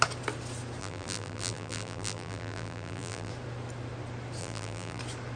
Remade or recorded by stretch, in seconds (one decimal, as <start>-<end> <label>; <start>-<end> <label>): 0.0-0.8 recorded; 0.8-3.3 remade; 3.3-4.4 recorded; 4.4-5.0 remade; 5.0-5.4 recorded